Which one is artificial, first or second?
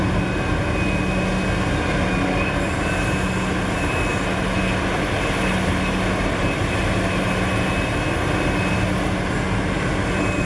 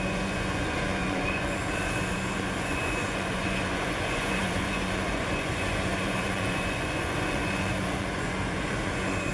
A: second